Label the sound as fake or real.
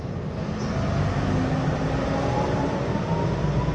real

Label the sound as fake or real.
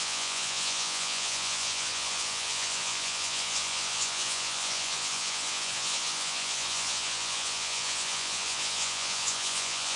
fake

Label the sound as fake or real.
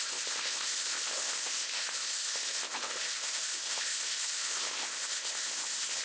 fake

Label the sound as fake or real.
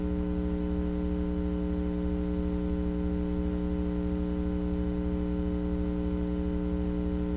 real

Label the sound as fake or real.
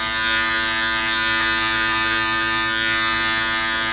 real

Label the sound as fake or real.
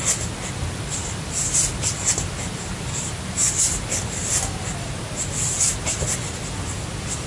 real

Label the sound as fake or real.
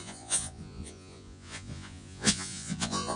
fake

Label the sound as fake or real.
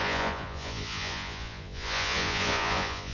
fake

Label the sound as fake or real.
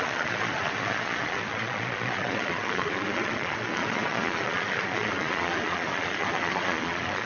fake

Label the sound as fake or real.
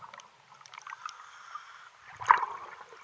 real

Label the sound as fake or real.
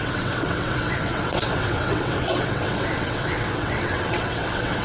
fake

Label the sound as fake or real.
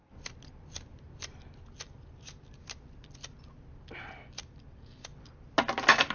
real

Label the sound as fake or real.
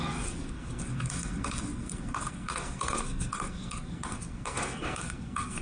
fake